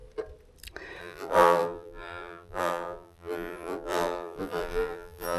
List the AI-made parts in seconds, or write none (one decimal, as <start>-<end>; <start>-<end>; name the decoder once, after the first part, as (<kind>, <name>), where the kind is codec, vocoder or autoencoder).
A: 1.0-5.4 (vocoder, BigVGAN v2)